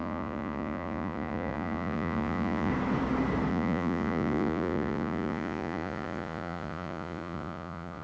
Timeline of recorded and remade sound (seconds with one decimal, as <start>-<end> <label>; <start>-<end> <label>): 0.0-2.7 remade; 2.7-3.5 recorded; 3.5-8.0 remade